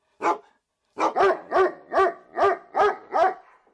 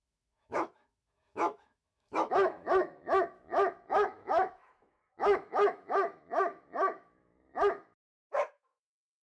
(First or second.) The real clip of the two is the first